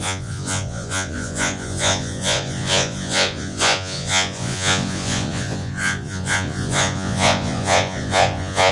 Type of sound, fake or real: fake